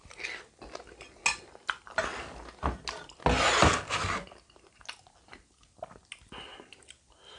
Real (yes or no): yes